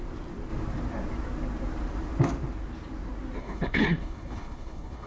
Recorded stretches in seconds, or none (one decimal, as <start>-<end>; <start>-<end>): 0.0-3.4